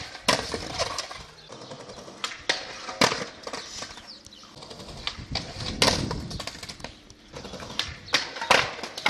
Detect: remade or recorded recorded